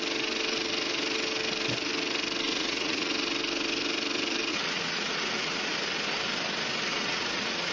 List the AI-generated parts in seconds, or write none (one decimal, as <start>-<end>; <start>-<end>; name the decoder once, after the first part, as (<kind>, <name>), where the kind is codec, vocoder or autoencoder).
2.5-3.1 (vocoder, Vocos); 4.5-5.7; 6.9-7.7

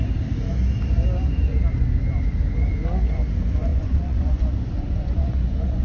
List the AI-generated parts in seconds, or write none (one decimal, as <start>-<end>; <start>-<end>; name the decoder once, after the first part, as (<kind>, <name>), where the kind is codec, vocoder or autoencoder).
3.7-5.8 (vocoder, Vocos)

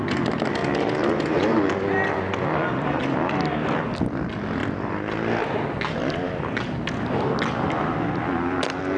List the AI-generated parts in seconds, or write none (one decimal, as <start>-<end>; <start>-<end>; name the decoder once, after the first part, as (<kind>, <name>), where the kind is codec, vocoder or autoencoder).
none

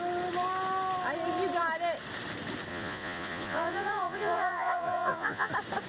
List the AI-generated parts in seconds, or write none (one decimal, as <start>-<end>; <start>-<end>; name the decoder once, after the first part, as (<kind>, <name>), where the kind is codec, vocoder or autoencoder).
2.7-5.5 (vocoder, Vocos)

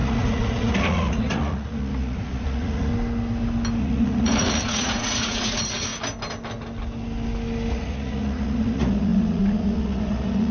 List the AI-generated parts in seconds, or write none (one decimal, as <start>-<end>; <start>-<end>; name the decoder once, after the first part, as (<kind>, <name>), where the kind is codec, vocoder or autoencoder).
0.0-2.9 (vocoder, Vocos); 3.8-5.9; 7.7-10.5

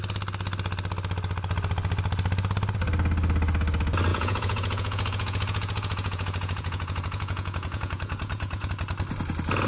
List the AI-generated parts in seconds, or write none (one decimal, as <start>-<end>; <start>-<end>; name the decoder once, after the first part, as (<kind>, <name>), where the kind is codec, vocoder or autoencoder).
4.1-8.7 (vocoder, Vocos)

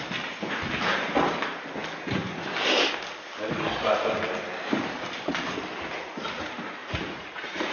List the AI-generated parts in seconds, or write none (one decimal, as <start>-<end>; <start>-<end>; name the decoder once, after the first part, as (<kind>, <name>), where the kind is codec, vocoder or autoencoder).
6.8-7.7 (vocoder, Vocos)

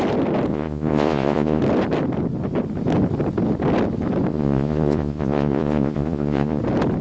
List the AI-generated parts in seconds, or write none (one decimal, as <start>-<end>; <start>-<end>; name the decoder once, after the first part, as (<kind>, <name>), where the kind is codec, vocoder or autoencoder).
0.5-1.6 (vocoder, Vocos); 4.3-6.6